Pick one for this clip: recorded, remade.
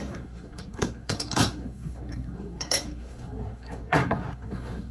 remade